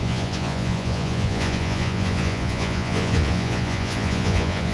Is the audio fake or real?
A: fake